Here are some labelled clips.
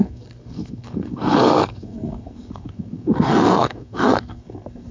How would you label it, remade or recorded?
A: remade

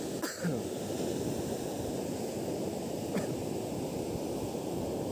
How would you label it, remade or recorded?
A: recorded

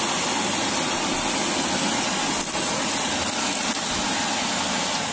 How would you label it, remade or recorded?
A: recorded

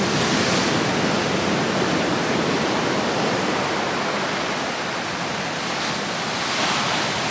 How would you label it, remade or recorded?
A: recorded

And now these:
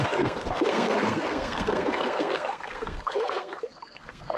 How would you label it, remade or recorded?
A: remade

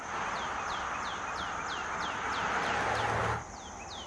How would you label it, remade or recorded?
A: recorded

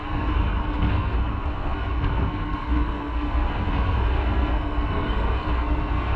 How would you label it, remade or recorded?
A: remade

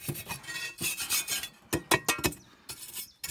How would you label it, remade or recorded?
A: recorded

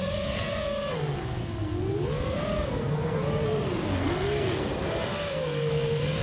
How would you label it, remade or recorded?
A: remade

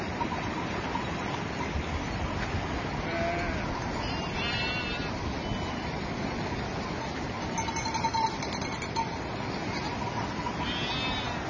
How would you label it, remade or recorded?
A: recorded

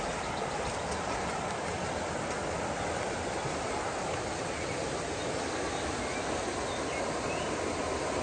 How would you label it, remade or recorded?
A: recorded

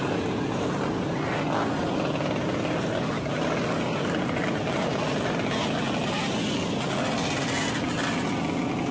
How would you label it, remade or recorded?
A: recorded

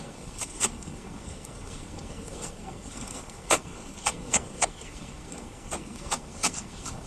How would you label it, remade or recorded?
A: remade